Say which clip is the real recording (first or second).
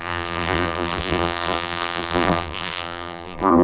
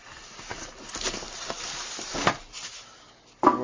second